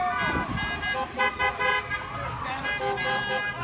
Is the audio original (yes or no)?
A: yes